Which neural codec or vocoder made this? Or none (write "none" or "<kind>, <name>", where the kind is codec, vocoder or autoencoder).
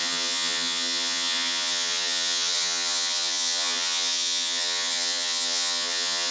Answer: vocoder, HiFi-GAN